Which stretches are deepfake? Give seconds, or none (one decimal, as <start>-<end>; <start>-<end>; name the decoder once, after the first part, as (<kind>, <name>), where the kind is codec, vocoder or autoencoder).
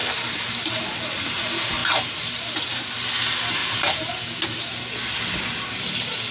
0.0-1.2 (vocoder, BigVGAN v2); 1.8-2.4